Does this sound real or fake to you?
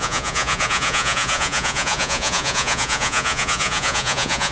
fake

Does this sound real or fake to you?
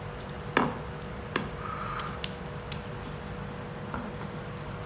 real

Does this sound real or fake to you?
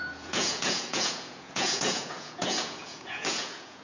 fake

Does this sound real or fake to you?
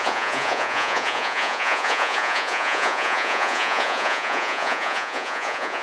fake